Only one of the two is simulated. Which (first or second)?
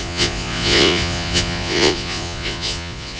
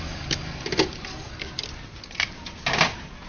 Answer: first